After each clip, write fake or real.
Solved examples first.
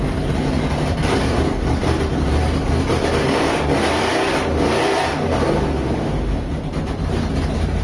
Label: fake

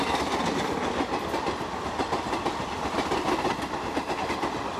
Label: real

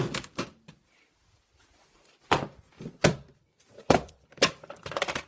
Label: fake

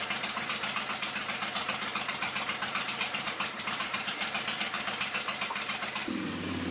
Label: fake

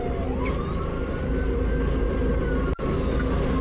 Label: real